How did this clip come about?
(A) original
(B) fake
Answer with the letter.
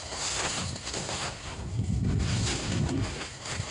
B